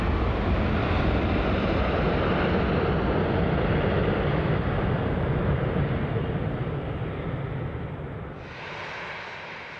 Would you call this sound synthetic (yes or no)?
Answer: no